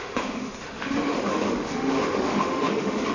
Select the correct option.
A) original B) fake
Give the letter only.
B